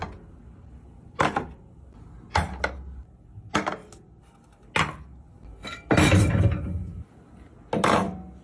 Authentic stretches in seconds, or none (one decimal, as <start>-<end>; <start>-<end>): 0.0-8.4